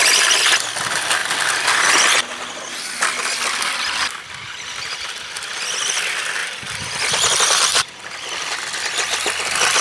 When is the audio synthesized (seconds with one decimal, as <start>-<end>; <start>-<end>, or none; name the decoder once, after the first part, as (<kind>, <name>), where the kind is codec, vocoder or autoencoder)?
6.4-7.0 (vocoder, BigVGAN v2); 7.7-8.5